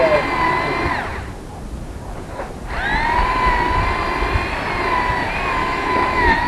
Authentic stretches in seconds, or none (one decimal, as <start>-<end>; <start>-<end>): 0.0-5.6